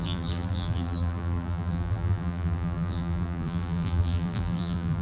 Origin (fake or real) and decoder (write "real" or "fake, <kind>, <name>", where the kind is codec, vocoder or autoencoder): fake, vocoder, BigVGAN v2